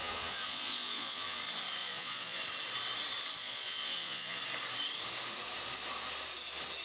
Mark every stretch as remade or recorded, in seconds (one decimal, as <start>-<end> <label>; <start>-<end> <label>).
0.0-1.4 remade; 1.4-1.8 recorded; 1.8-2.4 remade; 2.4-3.4 recorded; 3.4-4.4 remade; 4.4-6.8 recorded